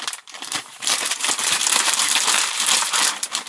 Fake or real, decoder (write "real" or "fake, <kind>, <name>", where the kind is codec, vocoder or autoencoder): fake, vocoder, BigVGAN v2